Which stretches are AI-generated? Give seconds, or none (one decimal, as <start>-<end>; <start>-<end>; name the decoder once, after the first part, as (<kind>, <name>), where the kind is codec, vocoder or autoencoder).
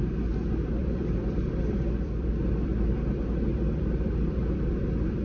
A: 0.8-2.9 (vocoder, BigVGAN v2); 3.5-4.8